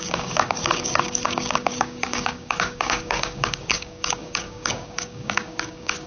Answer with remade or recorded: remade